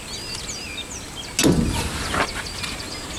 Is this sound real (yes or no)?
yes